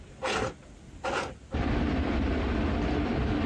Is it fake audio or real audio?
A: real